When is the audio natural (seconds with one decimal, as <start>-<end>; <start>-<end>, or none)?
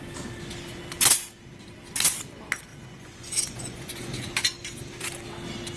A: 0.0-2.7; 4.3-5.8